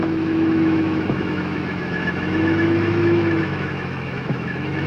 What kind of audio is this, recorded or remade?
remade